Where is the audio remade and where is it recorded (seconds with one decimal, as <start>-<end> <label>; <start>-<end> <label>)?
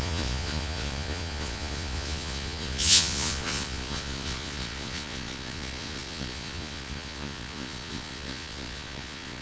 0.0-9.4 remade